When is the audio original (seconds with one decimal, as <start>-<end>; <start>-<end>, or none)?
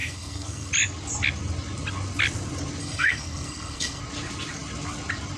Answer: 0.7-2.8; 4.0-5.4